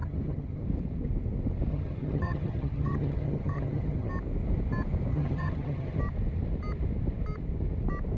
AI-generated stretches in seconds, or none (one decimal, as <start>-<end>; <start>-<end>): 0.0-0.6; 1.7-4.1; 5.1-6.0

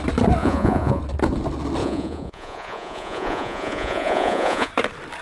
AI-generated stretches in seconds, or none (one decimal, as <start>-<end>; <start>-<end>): 0.4-1.0; 1.8-4.7

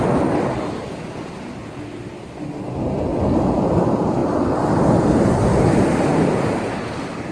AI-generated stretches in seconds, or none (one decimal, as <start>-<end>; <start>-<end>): none

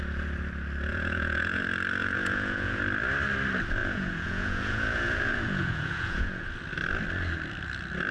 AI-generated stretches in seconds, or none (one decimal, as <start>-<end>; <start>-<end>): 0.9-1.6; 2.0-2.8; 3.8-6.5

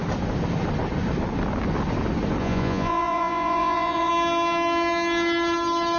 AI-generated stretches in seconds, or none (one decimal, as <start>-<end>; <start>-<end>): 2.4-4.1

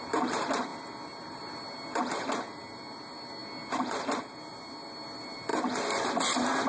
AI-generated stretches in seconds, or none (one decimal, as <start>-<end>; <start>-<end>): none